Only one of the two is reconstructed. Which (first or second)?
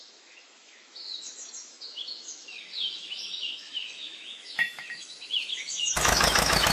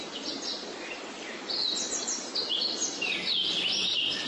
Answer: first